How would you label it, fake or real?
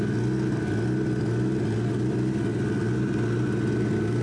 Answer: real